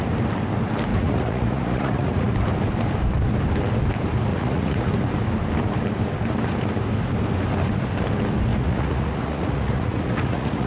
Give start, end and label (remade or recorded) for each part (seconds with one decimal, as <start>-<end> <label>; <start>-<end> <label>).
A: 0.0-0.9 recorded; 0.9-2.3 remade; 2.3-4.3 recorded; 4.3-4.9 remade; 4.9-8.5 recorded; 8.5-10.7 remade